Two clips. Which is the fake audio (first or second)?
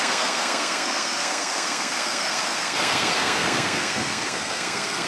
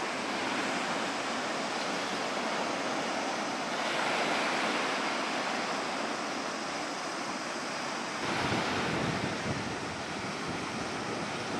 first